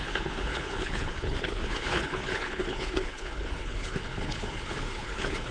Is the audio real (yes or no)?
no